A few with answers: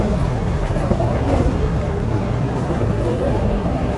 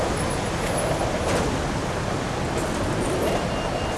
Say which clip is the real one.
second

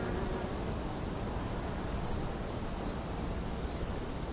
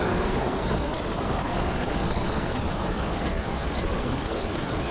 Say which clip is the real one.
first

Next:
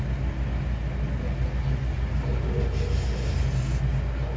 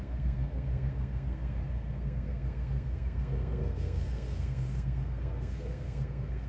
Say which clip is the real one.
first